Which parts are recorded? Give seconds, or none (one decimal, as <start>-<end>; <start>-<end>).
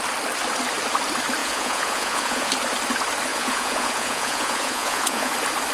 0.0-1.4; 2.5-3.3; 5.3-5.7